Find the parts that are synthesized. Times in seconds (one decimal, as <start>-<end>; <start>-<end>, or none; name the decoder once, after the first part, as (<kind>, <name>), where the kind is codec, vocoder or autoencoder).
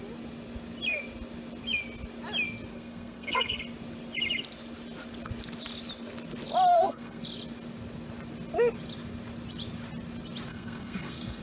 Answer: 2.7-3.6 (codec, SNAC); 6.7-7.2; 10.5-11.4